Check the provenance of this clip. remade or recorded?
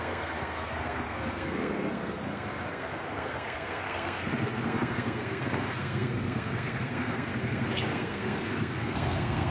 remade